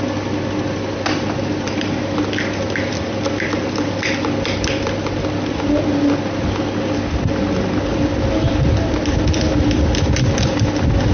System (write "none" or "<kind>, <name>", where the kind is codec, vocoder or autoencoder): none